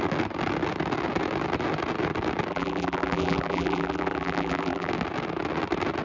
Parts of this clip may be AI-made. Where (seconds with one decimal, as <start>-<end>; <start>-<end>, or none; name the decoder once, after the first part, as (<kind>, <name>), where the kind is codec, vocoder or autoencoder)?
2.5-4.9 (vocoder, BigVGAN v2)